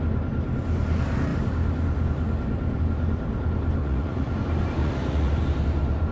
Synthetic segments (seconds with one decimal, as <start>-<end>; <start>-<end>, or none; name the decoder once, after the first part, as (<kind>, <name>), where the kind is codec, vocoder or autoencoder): 3.8-4.3 (vocoder, Vocos); 4.8-5.3